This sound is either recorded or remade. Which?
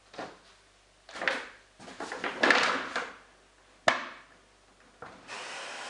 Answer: recorded